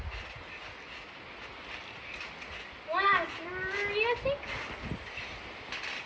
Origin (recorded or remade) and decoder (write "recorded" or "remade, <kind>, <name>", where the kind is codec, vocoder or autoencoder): recorded